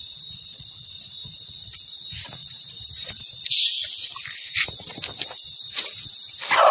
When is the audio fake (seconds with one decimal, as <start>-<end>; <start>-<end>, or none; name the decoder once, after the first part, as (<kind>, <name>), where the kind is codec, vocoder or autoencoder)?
none